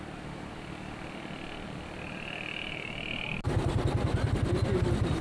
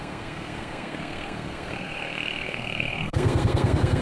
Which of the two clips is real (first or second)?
first